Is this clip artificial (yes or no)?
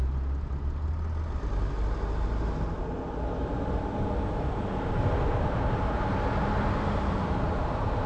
no